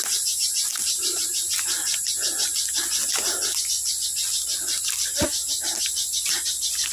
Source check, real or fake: real